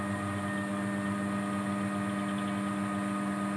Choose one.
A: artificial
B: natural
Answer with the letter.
B